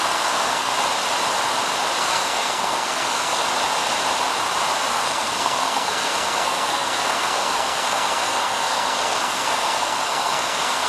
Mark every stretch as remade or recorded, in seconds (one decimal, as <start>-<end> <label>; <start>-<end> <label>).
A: 0.0-0.7 remade; 0.7-2.0 recorded; 2.0-3.4 remade; 3.4-4.9 recorded; 4.9-10.9 remade